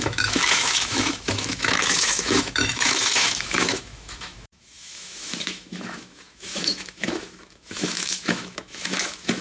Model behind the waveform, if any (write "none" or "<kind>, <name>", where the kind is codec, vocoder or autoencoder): autoencoder, DAC-VAE